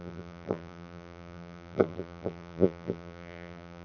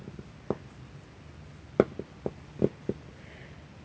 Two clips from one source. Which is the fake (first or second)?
first